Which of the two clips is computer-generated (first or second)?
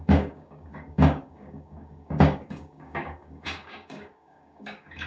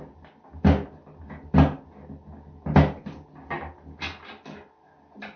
first